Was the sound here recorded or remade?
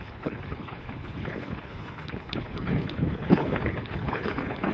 remade